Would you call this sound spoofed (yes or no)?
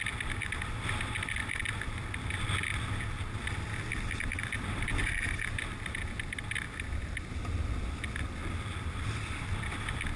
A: no